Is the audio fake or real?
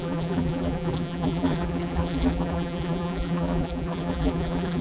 fake